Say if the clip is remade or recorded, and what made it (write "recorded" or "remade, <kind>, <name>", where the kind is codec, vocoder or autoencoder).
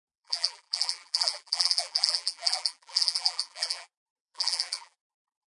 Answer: remade, vocoder, BigVGAN v2